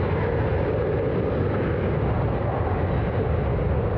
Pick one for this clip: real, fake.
real